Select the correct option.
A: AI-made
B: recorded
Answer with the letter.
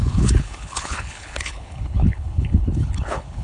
A